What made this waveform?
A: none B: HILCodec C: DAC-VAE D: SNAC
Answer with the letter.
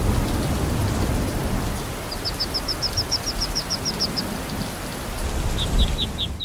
A